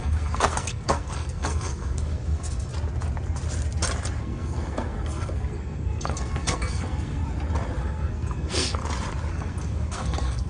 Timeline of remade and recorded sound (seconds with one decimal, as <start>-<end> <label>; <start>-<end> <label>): 0.0-2.7 remade; 2.7-4.2 recorded; 4.2-7.2 remade; 7.2-7.8 recorded; 7.8-8.8 remade; 8.8-9.3 recorded; 9.3-10.5 remade